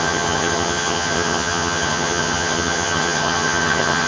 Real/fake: fake